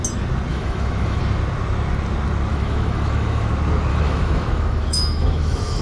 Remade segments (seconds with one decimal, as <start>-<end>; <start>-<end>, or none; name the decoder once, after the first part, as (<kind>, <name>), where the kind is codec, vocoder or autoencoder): 0.5-1.2 (autoencoder, DAC-VAE); 2.5-3.5; 3.9-5.8